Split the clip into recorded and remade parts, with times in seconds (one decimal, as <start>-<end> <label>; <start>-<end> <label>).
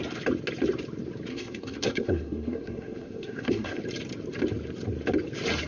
0.0-1.3 recorded; 1.3-3.8 remade; 3.8-5.7 recorded